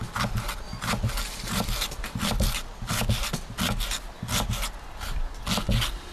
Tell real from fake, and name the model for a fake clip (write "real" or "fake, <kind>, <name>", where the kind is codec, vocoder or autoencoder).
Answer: real